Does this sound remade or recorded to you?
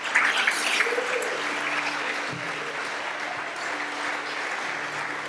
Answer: recorded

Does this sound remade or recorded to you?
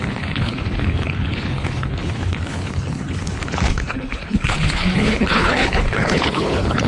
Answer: remade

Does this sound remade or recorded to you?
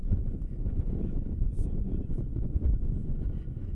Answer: remade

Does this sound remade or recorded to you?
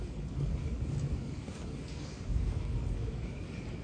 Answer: remade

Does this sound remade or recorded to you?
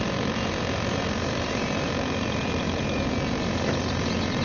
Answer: recorded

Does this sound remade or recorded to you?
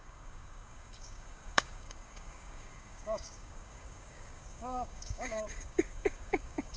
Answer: remade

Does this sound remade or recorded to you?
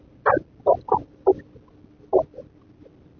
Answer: recorded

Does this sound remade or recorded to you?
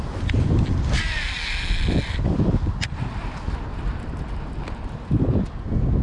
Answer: recorded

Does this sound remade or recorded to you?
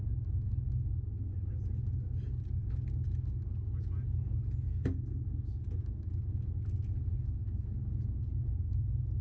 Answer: recorded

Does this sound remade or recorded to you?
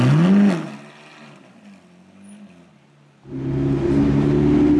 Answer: recorded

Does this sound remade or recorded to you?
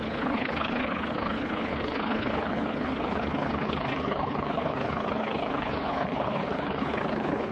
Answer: remade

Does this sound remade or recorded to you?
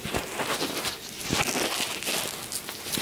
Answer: recorded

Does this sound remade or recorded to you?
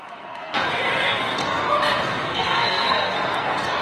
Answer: remade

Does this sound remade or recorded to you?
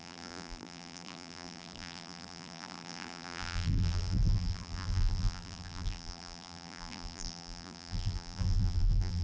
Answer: remade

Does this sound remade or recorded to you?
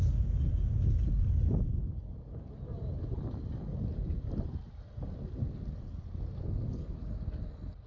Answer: recorded